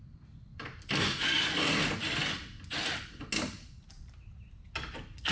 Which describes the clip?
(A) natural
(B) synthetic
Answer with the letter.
A